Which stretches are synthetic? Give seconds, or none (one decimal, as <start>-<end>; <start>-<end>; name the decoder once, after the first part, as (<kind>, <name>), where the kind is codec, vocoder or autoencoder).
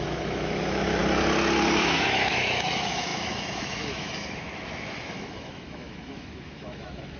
0.0-1.0 (autoencoder, DAC-VAE); 1.8-7.2